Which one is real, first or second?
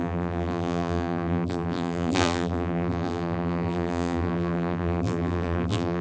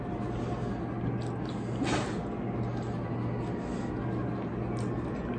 second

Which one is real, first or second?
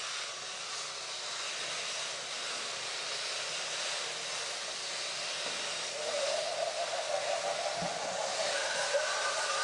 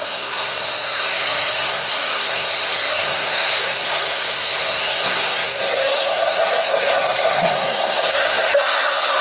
first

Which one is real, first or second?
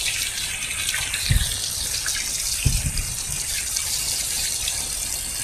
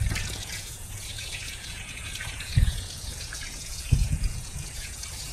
first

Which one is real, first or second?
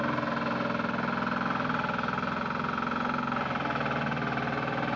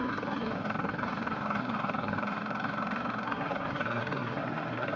first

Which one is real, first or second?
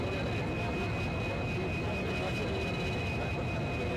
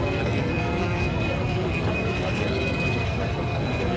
first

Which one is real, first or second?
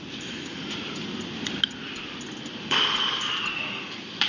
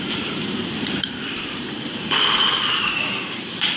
first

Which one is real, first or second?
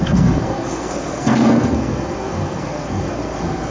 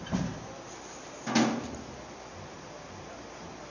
second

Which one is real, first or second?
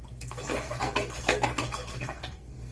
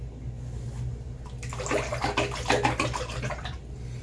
second